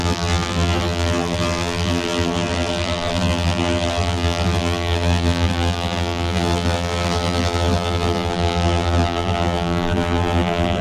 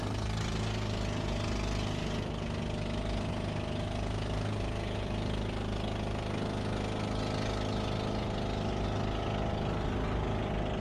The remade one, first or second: first